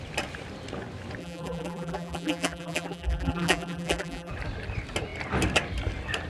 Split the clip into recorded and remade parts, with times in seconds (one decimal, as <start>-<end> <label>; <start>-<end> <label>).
0.0-1.2 recorded; 1.2-4.3 remade; 4.3-6.3 recorded